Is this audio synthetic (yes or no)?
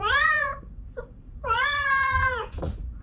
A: yes